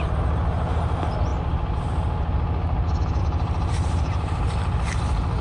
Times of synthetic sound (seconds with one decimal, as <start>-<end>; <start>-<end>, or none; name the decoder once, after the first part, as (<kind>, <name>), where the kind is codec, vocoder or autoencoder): none